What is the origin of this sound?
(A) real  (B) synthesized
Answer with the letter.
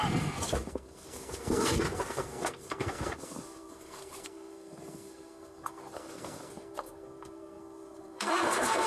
B